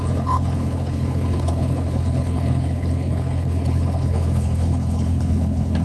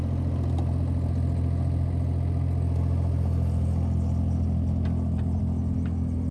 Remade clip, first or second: first